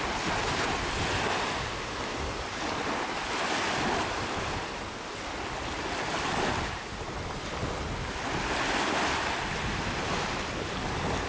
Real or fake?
real